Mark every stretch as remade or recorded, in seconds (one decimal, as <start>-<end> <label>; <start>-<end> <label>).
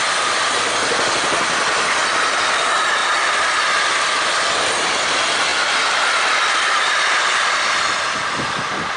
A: 0.0-3.0 recorded; 3.0-3.6 remade; 3.6-5.5 recorded; 5.5-8.5 remade; 8.5-9.0 recorded